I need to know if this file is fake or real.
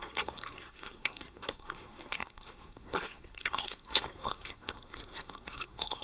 fake